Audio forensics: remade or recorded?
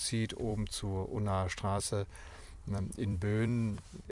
remade